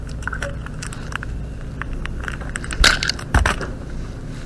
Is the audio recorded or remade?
recorded